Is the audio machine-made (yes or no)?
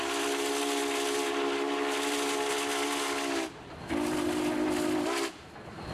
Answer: no